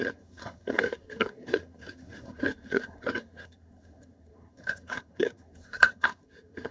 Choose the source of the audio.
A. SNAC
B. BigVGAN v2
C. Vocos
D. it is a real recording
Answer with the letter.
A